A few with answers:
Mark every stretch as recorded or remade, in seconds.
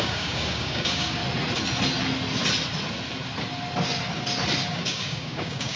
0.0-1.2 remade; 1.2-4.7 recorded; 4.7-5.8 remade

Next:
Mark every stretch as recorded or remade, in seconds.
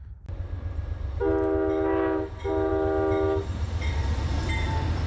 0.0-5.1 recorded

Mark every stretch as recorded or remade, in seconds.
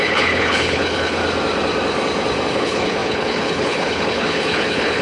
0.0-1.2 remade; 1.2-2.5 recorded; 2.5-5.0 remade